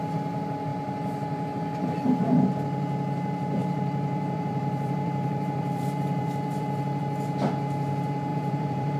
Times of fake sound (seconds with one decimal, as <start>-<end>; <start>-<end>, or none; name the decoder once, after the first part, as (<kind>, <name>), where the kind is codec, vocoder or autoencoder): 3.6-7.0 (vocoder, BigVGAN v2); 8.3-9.0